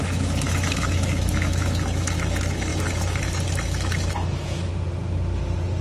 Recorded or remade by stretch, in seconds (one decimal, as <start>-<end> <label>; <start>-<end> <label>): 0.0-4.7 remade; 4.7-5.8 recorded